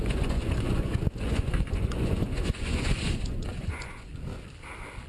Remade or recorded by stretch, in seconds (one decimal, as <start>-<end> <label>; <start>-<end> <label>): 0.0-4.1 remade; 4.1-5.1 recorded